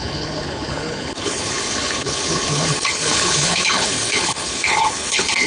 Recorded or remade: remade